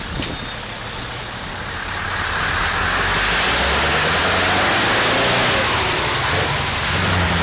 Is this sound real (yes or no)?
yes